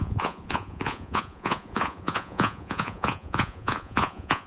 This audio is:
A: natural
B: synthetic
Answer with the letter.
B